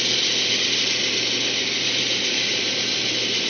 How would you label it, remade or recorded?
recorded